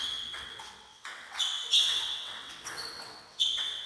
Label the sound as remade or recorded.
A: remade